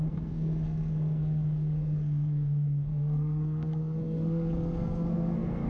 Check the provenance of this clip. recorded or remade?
remade